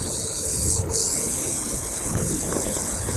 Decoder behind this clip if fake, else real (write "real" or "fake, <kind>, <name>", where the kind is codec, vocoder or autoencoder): fake, codec, HILCodec